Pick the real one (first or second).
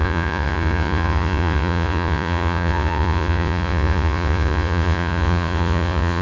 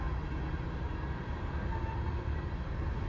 second